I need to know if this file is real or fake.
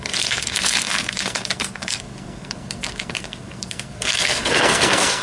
fake